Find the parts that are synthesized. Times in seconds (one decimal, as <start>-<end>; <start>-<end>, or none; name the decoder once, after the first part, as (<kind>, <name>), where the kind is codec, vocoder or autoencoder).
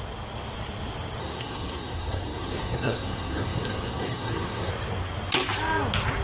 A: 1.2-4.7 (codec, SNAC)